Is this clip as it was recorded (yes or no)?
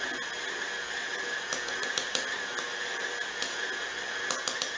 yes